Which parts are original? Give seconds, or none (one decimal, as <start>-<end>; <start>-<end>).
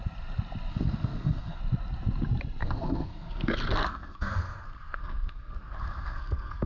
0.0-0.7; 1.6-2.6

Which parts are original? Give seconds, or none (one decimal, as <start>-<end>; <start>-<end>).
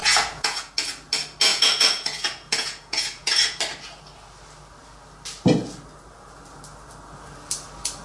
0.7-1.5; 3.6-8.0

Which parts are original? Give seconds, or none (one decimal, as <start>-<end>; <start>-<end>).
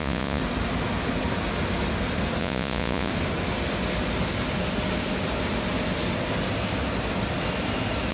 0.4-2.4; 3.1-8.1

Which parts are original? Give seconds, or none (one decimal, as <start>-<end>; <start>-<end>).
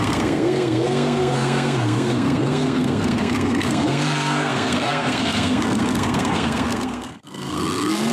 none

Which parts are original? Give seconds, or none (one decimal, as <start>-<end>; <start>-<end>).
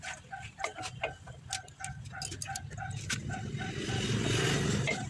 0.0-5.1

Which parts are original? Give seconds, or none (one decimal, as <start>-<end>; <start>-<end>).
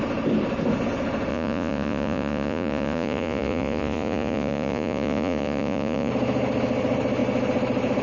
0.0-1.3; 6.1-8.0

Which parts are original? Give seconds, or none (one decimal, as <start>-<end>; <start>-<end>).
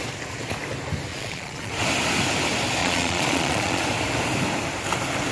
0.0-1.1; 1.7-2.8; 3.8-5.3